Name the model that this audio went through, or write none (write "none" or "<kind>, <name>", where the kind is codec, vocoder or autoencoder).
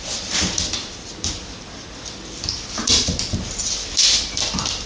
vocoder, BigVGAN v2